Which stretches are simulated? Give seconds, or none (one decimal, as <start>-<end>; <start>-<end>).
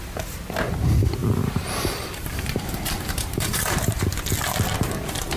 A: 1.2-4.2